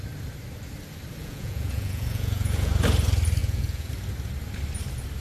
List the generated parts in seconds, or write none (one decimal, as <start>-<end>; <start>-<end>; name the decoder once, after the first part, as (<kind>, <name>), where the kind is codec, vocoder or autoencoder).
1.2-2.7 (vocoder, Vocos); 3.4-3.9